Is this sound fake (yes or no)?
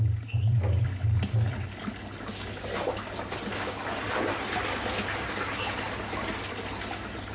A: no